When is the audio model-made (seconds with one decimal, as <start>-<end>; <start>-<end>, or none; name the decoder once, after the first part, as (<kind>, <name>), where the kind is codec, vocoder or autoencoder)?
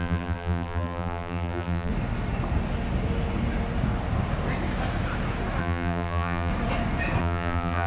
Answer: 0.0-1.9 (vocoder, BigVGAN v2); 5.6-6.5; 7.2-7.9